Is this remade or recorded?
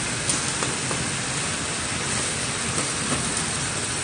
recorded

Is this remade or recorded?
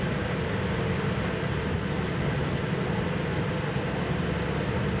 recorded